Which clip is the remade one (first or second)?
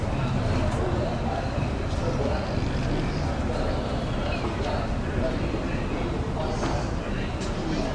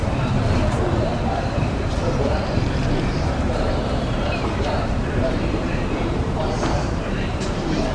second